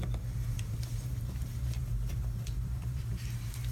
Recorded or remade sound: remade